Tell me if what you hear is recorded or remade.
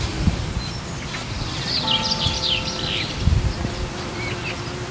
recorded